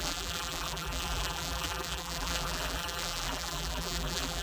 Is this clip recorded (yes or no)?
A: no